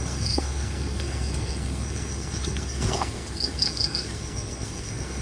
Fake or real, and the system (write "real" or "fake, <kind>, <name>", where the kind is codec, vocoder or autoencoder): fake, codec, SNAC